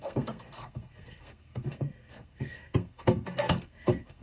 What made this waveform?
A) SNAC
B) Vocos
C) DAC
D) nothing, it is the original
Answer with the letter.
A